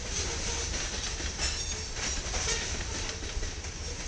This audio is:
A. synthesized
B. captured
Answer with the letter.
B